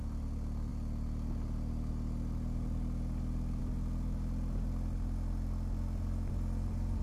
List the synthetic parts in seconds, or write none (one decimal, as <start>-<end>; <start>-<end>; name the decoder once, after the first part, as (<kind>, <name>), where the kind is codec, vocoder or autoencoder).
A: none